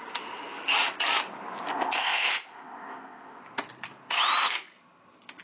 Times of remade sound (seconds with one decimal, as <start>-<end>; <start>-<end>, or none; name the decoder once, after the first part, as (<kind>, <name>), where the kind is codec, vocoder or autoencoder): 1.7-3.4 (codec, ZipCodec)